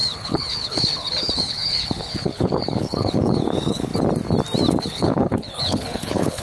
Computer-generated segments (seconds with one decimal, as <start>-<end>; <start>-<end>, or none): 0.0-3.9; 4.8-6.4